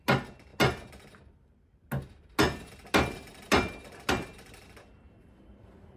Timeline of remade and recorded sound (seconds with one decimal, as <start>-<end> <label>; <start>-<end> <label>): 0.0-6.0 recorded